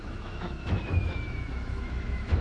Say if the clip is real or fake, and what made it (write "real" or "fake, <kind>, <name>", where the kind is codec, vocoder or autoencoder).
fake, autoencoder, DAC-VAE